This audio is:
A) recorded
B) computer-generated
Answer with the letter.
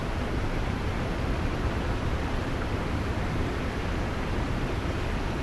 B